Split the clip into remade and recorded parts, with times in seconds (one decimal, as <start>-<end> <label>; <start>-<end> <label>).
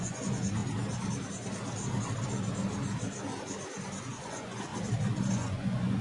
0.0-0.6 remade; 0.6-4.0 recorded; 4.0-4.7 remade; 4.7-5.3 recorded; 5.3-6.0 remade